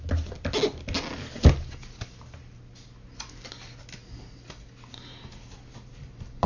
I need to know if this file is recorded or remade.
recorded